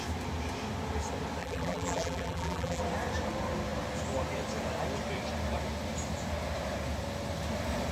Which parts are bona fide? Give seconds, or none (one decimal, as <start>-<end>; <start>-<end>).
0.0-1.4; 2.8-7.9